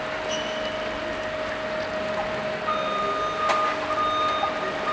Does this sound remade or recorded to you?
recorded